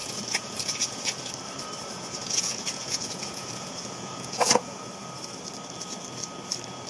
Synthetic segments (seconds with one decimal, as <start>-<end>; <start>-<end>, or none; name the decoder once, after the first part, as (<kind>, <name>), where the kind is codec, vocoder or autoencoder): 0.0-1.3 (vocoder, Vocos); 1.8-4.9

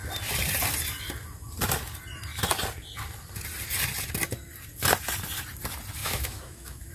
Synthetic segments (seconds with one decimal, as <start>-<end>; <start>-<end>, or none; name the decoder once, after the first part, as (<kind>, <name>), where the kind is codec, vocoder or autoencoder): 6.0-6.9 (autoencoder, DAC-VAE)

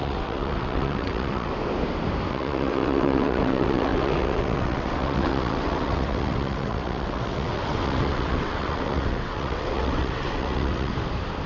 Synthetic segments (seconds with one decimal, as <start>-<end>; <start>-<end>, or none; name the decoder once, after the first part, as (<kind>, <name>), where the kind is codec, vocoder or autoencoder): 0.0-1.5 (vocoder, WaveNeXt); 2.3-10.9